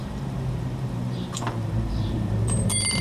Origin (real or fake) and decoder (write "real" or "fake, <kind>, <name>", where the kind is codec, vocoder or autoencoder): fake, vocoder, BigVGAN v2